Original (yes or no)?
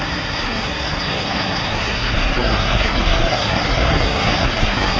no